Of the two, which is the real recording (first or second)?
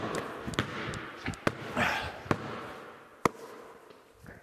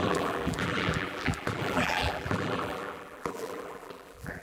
first